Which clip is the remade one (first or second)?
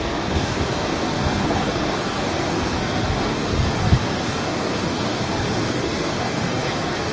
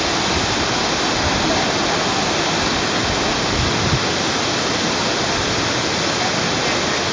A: first